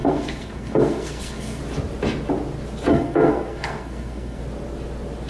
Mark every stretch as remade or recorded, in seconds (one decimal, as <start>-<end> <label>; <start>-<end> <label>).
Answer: 0.0-1.6 remade; 1.6-2.9 recorded; 2.9-4.4 remade; 4.4-5.3 recorded